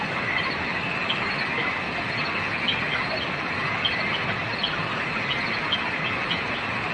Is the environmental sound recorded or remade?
recorded